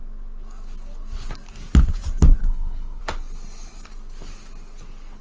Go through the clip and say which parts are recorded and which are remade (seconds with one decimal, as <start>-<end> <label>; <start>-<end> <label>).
0.0-2.4 recorded; 2.4-3.0 remade; 3.0-5.2 recorded

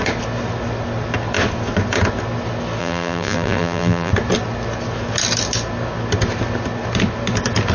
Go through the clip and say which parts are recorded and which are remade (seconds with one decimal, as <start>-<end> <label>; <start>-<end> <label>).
0.0-2.8 recorded; 2.8-4.1 remade; 4.1-7.7 recorded

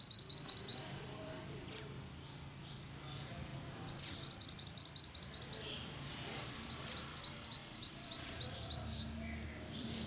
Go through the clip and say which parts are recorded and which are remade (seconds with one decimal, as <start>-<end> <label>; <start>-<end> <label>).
0.0-10.1 remade